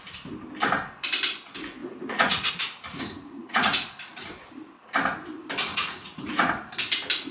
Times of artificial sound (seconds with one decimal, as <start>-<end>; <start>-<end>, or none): 1.8-2.5; 2.9-4.4; 5.7-6.5